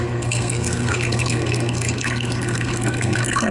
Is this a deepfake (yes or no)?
yes